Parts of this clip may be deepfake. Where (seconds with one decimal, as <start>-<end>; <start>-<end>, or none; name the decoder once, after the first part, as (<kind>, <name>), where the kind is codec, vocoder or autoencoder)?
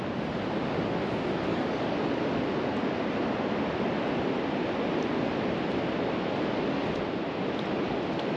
1.5-2.2 (codec, DAC)